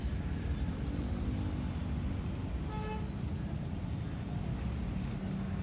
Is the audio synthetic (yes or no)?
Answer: no